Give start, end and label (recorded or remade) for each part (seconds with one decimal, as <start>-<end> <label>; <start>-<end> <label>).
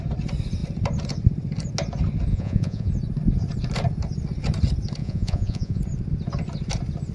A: 0.0-2.3 recorded; 2.3-2.9 remade; 2.9-5.0 recorded; 5.0-5.8 remade; 5.8-7.1 recorded